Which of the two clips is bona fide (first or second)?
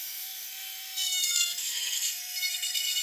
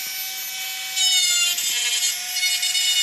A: second